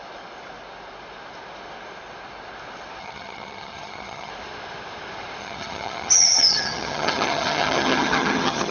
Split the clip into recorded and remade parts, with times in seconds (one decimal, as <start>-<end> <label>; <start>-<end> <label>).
0.0-3.0 recorded; 3.0-4.3 remade; 4.3-5.4 recorded; 5.4-8.7 remade